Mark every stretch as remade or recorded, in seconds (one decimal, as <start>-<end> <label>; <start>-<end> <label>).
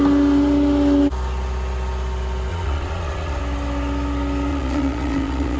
0.0-2.5 recorded; 2.5-3.4 remade; 3.4-4.5 recorded; 4.5-5.6 remade